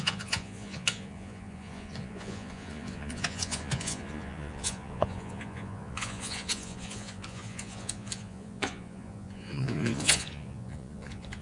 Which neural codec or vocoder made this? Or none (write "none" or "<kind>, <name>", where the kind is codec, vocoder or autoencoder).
vocoder, Vocos